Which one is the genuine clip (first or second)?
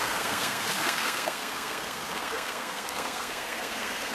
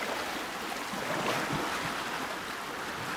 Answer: second